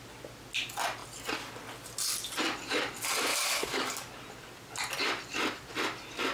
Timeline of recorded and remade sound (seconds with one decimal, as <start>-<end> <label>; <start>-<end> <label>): 0.0-3.3 recorded; 3.3-4.1 remade; 4.1-6.3 recorded

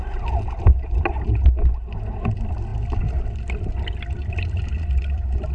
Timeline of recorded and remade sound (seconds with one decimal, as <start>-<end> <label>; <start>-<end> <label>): 0.0-5.5 recorded

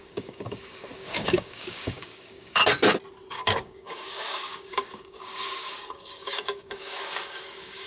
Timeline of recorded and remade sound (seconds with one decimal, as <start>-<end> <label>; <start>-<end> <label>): 0.0-2.6 remade; 2.6-3.3 recorded; 3.3-7.9 remade